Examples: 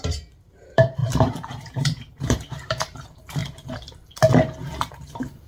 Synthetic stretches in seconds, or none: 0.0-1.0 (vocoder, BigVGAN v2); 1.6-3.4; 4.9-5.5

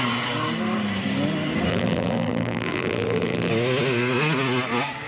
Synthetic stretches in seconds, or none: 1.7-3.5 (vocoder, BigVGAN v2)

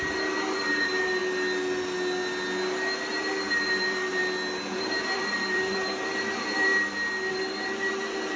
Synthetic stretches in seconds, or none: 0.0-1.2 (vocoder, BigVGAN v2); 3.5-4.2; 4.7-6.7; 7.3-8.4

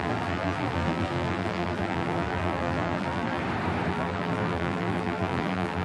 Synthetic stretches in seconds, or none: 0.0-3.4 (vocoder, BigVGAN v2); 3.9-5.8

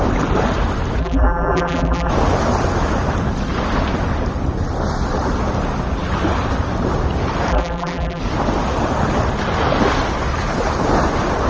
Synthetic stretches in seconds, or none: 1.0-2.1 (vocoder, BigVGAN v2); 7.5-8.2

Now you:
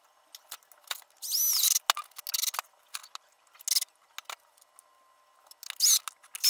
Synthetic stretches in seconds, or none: none